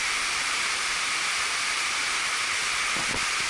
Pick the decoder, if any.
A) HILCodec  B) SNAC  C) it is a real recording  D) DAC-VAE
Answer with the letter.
C